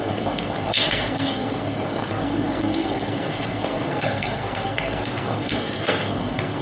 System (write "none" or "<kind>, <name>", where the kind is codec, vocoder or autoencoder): codec, SNAC